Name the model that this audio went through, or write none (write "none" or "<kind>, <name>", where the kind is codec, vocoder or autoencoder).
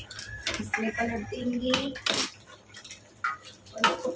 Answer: none